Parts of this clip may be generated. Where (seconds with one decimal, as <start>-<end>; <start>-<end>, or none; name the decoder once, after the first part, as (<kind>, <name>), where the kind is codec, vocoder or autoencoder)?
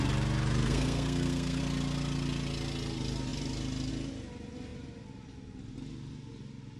0.6-1.6 (codec, SNAC)